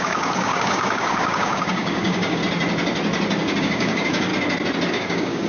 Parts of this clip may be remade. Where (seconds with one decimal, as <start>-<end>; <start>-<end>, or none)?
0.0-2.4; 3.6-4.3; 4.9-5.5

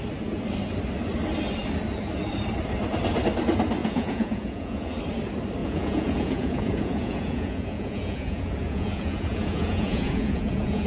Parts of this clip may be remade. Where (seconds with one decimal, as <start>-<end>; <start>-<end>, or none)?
3.8-4.9; 5.6-10.9

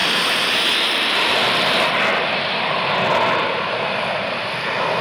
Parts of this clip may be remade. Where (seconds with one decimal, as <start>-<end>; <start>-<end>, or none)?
0.0-1.9